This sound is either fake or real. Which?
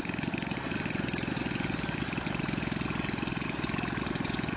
real